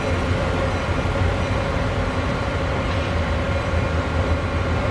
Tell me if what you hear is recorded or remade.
recorded